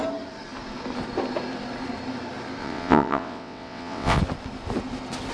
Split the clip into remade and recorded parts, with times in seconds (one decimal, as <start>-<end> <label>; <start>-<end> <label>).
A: 0.0-2.6 recorded; 2.6-4.2 remade; 4.2-5.3 recorded